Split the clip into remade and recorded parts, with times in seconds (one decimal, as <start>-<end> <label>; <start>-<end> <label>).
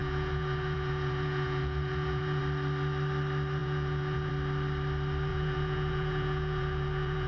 0.0-2.4 remade; 2.4-3.6 recorded; 3.6-4.3 remade; 4.3-5.3 recorded; 5.3-7.3 remade